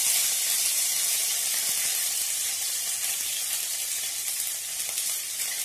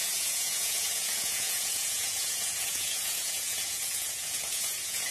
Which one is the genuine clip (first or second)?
first